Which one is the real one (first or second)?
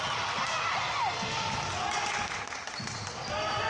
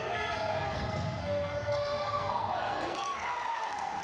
first